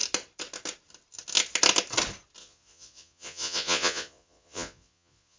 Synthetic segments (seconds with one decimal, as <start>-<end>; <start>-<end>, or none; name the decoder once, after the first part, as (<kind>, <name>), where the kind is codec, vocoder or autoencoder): 2.4-5.4 (vocoder, Vocos)